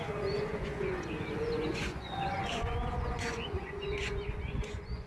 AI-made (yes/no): yes